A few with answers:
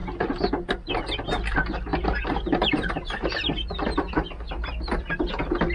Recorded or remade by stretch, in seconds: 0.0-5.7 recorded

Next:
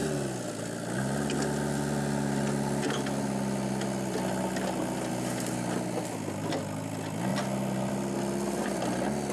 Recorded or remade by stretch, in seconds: 0.0-9.3 recorded